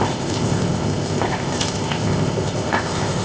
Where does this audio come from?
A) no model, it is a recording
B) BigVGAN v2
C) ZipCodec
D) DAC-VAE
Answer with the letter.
C